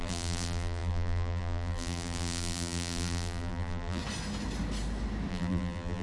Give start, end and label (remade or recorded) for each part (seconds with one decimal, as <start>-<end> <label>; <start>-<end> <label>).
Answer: 0.0-4.0 remade; 4.0-5.3 recorded; 5.3-6.0 remade

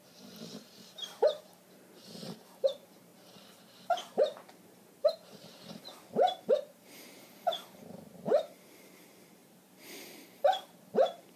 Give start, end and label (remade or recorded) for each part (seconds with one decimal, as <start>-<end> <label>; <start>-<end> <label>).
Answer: 0.0-11.4 remade

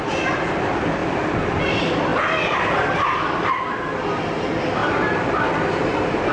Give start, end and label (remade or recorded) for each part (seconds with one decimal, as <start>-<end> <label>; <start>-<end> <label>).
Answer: 0.0-4.8 recorded; 4.8-6.3 remade

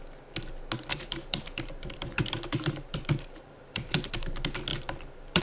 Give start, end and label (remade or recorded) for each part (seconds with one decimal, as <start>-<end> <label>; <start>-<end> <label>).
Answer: 0.0-0.9 recorded; 0.9-4.1 remade; 4.1-4.7 recorded; 4.7-5.4 remade

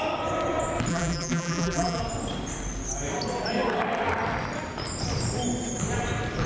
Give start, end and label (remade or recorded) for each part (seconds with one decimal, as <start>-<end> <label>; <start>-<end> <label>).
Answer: 0.0-0.9 recorded; 0.9-2.0 remade; 2.0-6.5 recorded

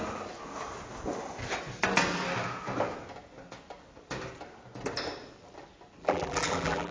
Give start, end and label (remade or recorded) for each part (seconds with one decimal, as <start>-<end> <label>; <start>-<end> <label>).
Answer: 0.0-6.0 recorded; 6.0-6.9 remade

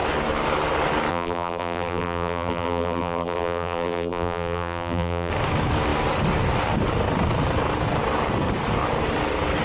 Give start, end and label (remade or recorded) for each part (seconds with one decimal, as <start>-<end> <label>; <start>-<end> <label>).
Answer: 0.0-1.1 recorded; 1.1-5.3 remade; 5.3-9.6 recorded